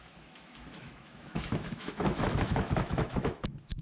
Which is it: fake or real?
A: fake